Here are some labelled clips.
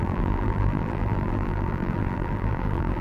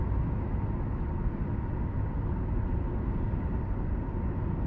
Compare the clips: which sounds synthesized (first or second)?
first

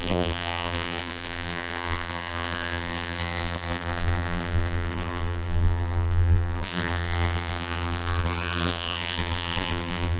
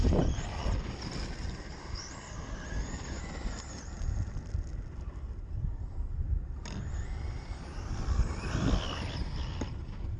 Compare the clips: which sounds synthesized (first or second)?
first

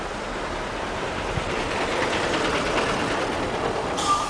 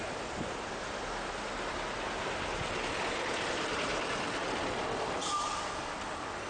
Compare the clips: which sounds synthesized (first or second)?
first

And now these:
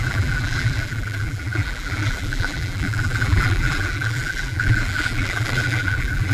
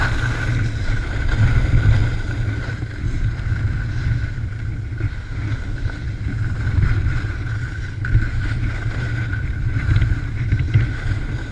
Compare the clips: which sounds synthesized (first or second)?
first